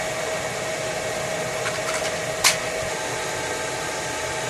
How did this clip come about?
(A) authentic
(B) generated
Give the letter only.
A